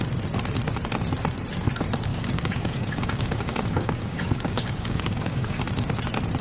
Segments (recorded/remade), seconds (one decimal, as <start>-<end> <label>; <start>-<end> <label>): 0.0-2.1 recorded; 2.1-5.6 remade; 5.6-6.4 recorded